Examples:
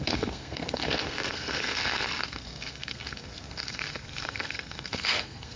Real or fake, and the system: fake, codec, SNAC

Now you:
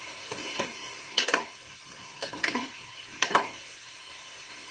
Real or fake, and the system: fake, codec, SNAC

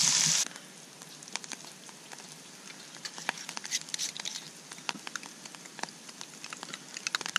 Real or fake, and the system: real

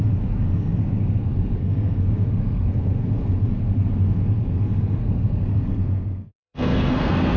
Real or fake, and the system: fake, codec, SNAC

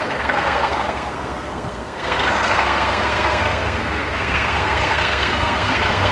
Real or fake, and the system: fake, codec, SNAC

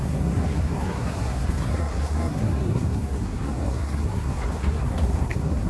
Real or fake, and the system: fake, codec, SNAC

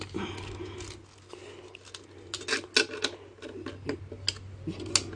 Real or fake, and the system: real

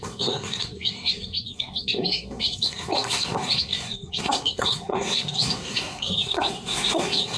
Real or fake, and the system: fake, codec, SNAC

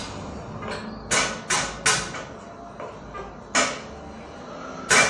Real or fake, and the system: real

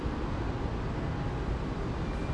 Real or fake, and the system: real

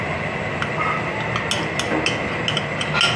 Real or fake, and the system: real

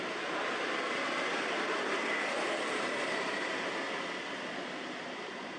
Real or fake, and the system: real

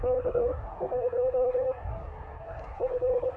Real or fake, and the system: fake, codec, SNAC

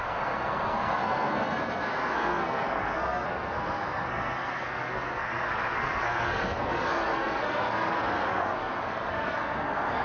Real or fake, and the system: fake, codec, SNAC